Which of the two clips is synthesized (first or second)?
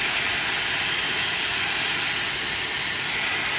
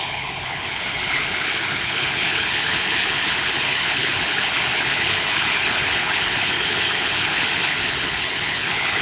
second